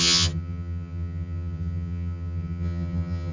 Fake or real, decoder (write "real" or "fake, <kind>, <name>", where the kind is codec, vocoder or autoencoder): fake, vocoder, HiFi-GAN